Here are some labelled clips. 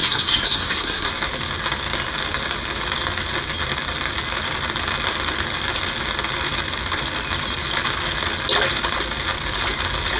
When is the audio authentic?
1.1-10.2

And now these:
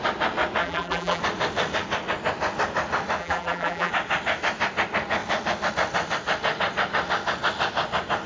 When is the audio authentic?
0.0-0.6; 1.2-3.2; 3.9-8.3

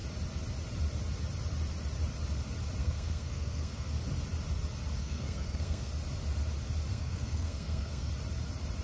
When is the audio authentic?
0.0-2.8; 3.9-5.0; 5.9-6.9; 8.1-8.8

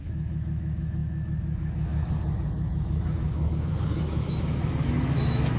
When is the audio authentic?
none